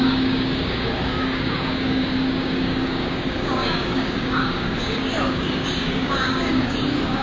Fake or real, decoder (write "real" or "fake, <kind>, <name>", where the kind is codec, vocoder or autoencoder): fake, codec, DAC